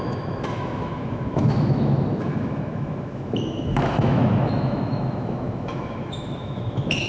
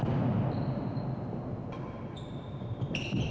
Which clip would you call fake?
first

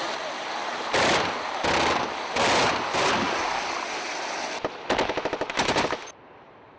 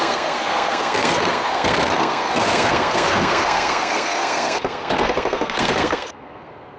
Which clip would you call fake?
second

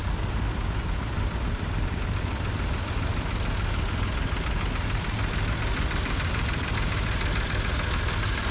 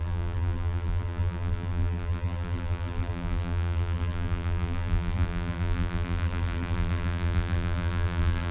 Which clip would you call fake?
second